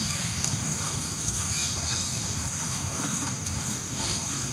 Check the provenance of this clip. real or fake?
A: fake